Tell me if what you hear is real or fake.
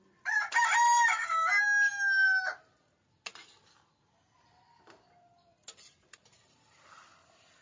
real